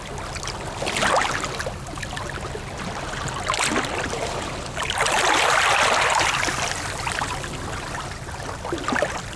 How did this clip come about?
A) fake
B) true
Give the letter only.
B